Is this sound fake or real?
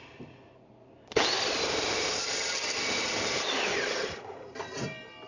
fake